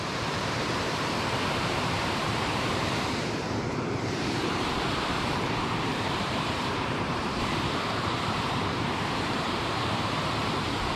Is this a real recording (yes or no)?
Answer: no